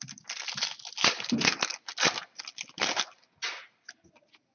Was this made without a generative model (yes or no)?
yes